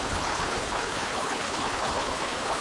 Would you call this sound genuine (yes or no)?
no